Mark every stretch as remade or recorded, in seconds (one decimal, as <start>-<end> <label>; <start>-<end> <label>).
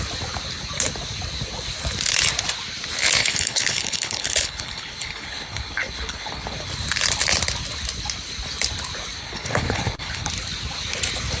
0.0-3.2 recorded; 3.2-6.7 remade; 6.7-9.2 recorded; 9.2-10.3 remade; 10.3-11.4 recorded